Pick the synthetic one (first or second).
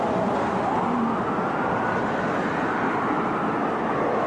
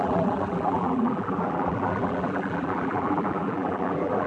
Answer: second